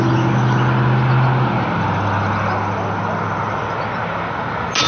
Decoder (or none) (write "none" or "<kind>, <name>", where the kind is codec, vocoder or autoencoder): none